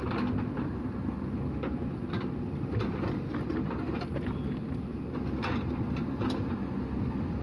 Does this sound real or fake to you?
real